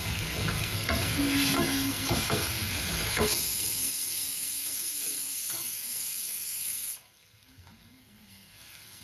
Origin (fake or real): fake